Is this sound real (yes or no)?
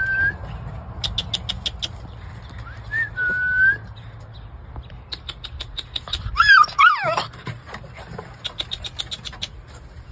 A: yes